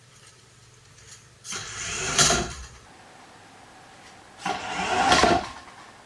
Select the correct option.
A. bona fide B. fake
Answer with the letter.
A